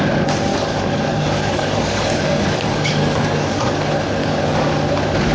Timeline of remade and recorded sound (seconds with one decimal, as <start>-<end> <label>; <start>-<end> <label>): 0.0-0.5 recorded; 0.5-3.7 remade; 3.7-4.2 recorded; 4.2-4.7 remade; 4.7-5.3 recorded